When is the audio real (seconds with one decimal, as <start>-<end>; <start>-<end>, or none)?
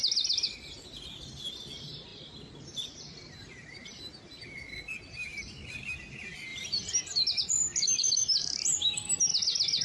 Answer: 0.0-2.1; 4.0-6.5; 8.1-9.8